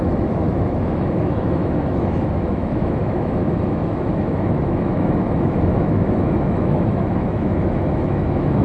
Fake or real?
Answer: fake